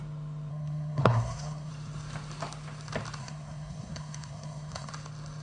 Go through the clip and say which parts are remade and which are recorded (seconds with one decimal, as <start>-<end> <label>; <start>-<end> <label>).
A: 0.0-0.5 recorded; 0.5-1.7 remade; 1.7-3.2 recorded; 3.2-4.9 remade; 4.9-5.4 recorded